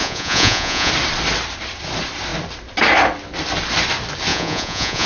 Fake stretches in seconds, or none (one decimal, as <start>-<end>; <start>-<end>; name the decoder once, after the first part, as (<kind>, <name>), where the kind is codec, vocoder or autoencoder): 0.0-0.9 (vocoder, Vocos); 4.3-5.1